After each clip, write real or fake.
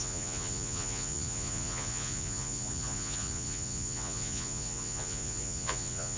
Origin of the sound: fake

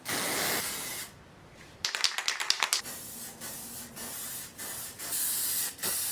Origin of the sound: real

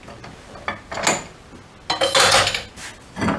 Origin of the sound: real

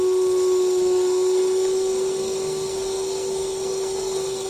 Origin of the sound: fake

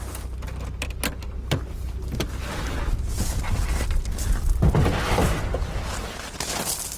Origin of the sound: real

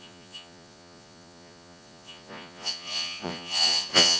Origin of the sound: fake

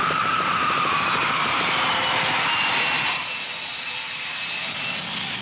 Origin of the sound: real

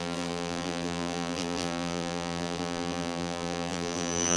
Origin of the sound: fake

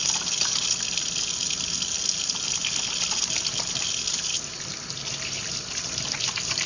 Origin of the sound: real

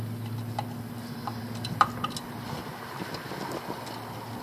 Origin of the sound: real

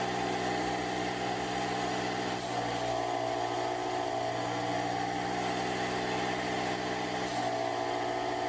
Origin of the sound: real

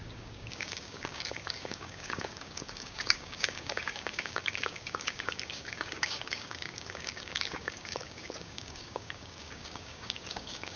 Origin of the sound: fake